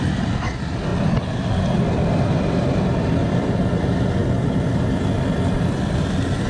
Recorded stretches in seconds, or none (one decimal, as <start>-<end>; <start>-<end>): 0.9-2.5

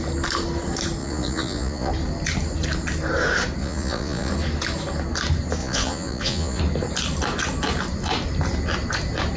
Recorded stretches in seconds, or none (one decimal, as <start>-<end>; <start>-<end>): 0.0-1.0; 1.9-3.6; 4.3-5.6; 6.6-9.4